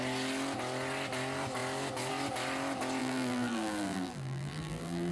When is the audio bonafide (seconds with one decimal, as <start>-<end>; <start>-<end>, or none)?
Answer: 0.0-3.0